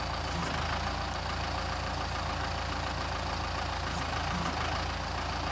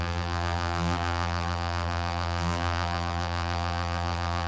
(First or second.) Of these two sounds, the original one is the first